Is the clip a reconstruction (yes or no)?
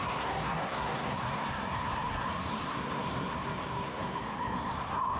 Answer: yes